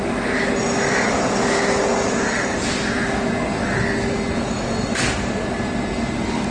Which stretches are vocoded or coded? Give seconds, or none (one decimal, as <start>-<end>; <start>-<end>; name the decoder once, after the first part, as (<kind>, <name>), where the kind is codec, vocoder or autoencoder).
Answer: none